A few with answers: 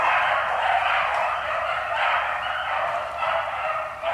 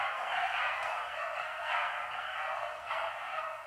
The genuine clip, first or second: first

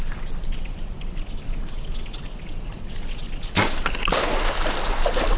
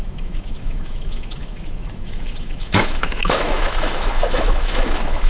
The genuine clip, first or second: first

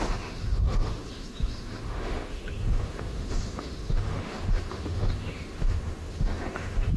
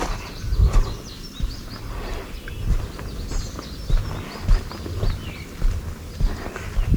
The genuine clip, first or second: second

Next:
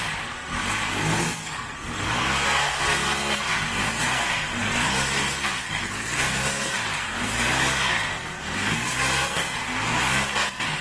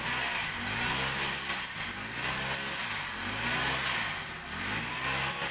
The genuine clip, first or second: second